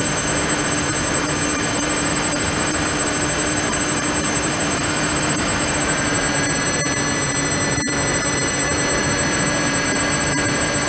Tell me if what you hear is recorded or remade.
remade